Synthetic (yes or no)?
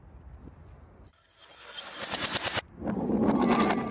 no